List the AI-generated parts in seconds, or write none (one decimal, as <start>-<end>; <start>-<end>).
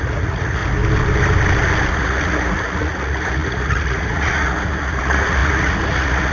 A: 0.0-0.6; 1.9-6.3